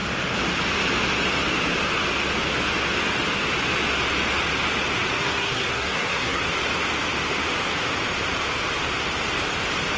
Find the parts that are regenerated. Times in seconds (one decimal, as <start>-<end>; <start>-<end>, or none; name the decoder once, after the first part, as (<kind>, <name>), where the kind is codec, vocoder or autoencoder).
5.2-6.4 (codec, SNAC)